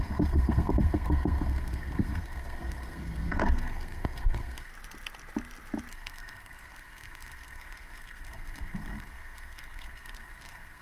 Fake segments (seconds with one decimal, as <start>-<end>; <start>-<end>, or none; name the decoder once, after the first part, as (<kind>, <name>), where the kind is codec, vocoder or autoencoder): 0.0-4.7 (codec, SNAC); 5.9-10.8